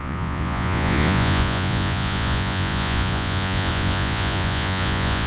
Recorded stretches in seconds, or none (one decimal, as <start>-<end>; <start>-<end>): none

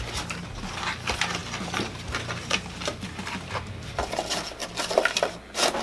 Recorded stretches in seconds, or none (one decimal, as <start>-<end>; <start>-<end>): 0.0-5.8

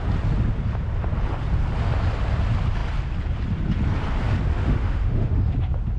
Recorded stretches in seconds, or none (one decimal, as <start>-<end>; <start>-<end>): 0.0-4.6; 5.5-6.0

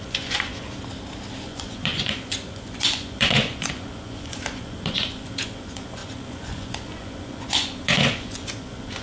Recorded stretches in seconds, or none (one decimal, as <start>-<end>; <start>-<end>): 0.7-1.4